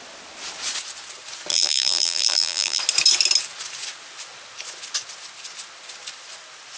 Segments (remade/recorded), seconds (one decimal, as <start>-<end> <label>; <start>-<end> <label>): 0.0-1.5 recorded; 1.5-2.8 remade; 2.8-6.8 recorded